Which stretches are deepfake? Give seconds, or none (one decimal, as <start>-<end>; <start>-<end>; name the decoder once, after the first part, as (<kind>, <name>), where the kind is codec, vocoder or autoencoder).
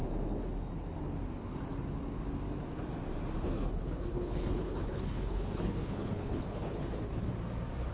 3.4-7.3 (codec, HILCodec)